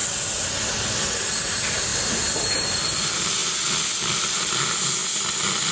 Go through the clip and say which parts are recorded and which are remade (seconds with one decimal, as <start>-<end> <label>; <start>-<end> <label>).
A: 0.0-5.7 recorded